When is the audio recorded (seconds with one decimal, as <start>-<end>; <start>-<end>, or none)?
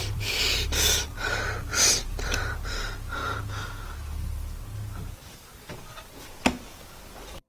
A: 3.2-5.7